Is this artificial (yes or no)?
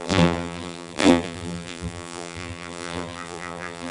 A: yes